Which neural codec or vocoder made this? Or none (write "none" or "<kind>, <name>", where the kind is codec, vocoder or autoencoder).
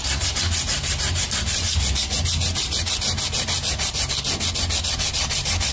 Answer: none